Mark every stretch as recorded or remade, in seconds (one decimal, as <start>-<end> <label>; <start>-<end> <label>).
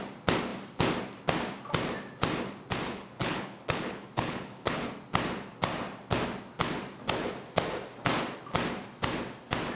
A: 0.0-2.9 recorded; 2.9-4.9 remade; 4.9-9.8 recorded